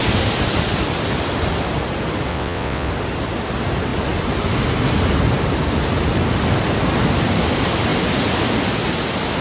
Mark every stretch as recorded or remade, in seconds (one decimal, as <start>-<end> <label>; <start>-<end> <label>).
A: 0.0-2.3 recorded; 2.3-2.9 remade; 2.9-9.4 recorded